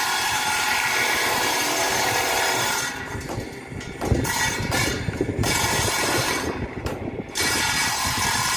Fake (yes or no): yes